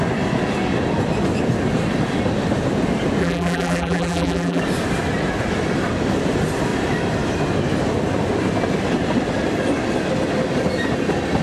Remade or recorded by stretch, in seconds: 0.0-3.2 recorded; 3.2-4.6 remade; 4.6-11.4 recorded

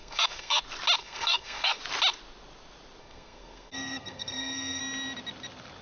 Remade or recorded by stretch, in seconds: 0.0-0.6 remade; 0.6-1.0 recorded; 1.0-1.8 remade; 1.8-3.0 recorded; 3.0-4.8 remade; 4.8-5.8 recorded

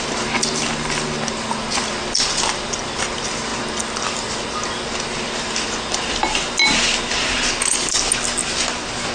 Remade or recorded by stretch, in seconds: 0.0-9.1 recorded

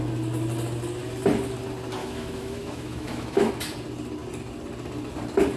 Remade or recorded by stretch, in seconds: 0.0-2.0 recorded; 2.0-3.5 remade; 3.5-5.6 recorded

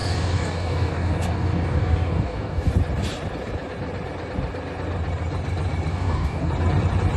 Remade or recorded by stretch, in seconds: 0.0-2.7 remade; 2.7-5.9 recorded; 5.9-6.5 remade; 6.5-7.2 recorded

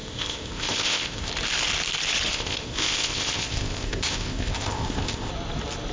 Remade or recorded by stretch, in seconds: 0.0-1.3 remade; 1.3-2.3 recorded; 2.3-5.3 remade; 5.3-5.9 recorded

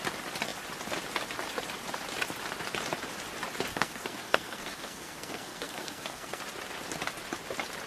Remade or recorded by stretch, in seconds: 0.0-3.7 recorded; 3.7-6.4 remade; 6.4-7.9 recorded